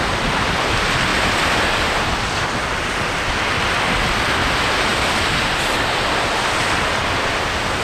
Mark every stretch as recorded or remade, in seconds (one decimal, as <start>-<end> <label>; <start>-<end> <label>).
0.0-4.9 recorded; 4.9-7.2 remade; 7.2-7.8 recorded